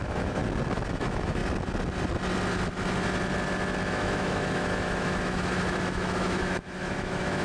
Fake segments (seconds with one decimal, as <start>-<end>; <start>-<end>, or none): 0.0-0.4; 0.9-1.4; 3.9-7.4

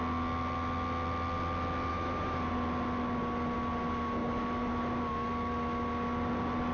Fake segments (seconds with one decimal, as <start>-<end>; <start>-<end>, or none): 1.9-2.5; 4.2-4.8

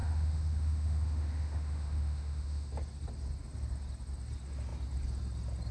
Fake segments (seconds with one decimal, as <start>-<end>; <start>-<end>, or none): 0.0-2.7

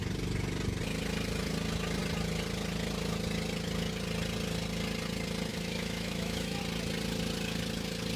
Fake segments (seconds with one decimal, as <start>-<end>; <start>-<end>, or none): 5.5-6.6

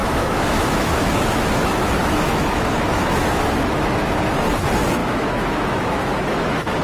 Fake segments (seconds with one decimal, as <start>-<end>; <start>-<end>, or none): 0.0-4.1; 5.0-6.8

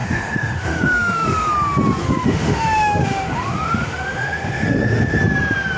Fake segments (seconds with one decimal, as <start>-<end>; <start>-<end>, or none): 0.0-1.5; 2.0-5.2